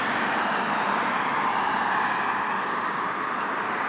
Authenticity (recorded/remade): recorded